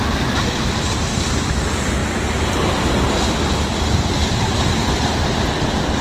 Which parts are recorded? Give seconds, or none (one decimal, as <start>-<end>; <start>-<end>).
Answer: 0.0-6.0